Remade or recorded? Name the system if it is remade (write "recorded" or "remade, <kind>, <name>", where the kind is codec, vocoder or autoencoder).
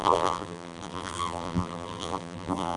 remade, vocoder, BigVGAN v2